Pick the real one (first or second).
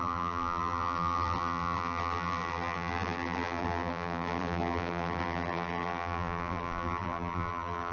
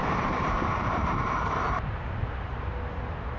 second